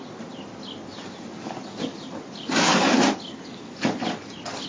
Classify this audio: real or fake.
real